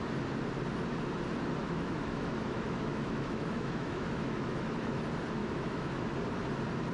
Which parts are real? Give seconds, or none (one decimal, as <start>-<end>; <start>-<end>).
0.0-1.6; 5.0-5.4; 6.1-6.9